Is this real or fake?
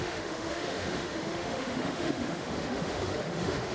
fake